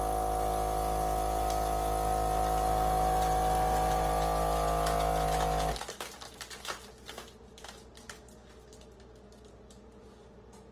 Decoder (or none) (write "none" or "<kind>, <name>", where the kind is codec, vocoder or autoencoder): none